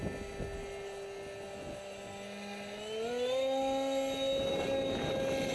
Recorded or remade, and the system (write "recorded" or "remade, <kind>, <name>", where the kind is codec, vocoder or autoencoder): recorded